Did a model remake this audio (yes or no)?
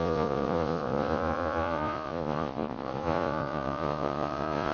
yes